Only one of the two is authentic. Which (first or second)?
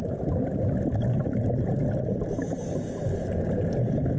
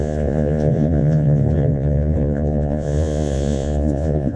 first